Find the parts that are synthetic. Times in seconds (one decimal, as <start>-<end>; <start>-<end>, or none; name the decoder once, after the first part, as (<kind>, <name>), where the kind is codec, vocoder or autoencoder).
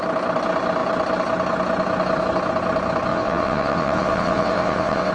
3.1-5.1 (vocoder, WaveNeXt)